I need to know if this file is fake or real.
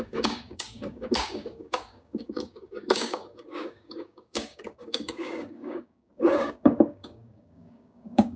fake